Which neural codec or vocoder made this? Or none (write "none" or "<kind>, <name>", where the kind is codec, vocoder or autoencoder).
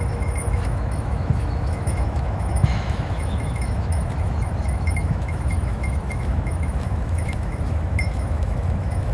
autoencoder, DAC-VAE